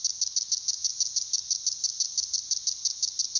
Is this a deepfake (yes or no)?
no